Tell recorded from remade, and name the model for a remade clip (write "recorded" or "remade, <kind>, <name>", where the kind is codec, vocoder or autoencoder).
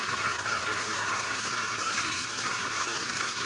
remade, codec, SNAC